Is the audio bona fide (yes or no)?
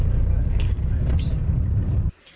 yes